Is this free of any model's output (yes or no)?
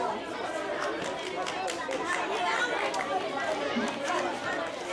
yes